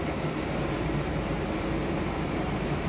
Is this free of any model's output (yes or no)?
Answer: no